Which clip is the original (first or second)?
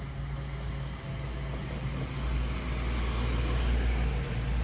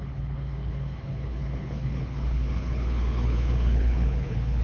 first